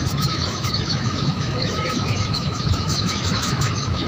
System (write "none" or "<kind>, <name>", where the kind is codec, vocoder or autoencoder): autoencoder, DAC-VAE